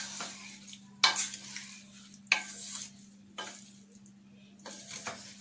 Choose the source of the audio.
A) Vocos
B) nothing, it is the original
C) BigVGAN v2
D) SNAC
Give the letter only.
B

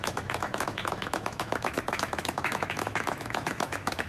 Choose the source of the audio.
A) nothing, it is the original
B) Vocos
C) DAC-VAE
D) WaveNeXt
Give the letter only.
C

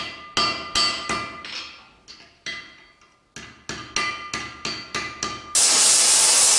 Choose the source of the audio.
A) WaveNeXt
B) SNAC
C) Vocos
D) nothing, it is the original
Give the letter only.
D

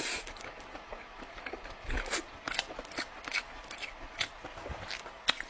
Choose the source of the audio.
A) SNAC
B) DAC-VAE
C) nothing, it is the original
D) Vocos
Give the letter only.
C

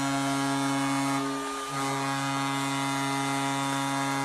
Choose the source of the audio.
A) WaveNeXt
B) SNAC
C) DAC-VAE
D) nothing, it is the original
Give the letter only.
D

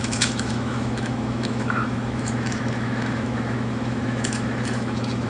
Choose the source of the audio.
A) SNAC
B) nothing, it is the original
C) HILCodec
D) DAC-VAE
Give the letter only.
D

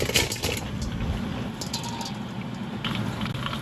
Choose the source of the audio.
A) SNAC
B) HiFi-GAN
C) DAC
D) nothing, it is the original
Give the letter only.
D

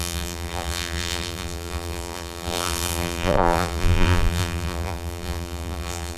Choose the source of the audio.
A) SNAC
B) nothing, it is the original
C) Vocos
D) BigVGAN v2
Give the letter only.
D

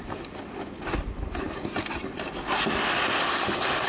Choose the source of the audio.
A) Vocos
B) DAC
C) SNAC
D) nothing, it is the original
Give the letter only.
D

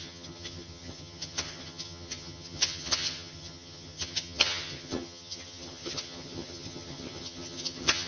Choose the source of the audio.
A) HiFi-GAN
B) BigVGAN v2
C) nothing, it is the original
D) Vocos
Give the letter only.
A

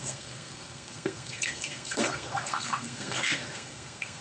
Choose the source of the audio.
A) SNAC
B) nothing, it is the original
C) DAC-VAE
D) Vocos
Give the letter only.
A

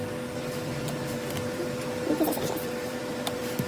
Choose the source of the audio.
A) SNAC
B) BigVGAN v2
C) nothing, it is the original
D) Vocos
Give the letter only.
B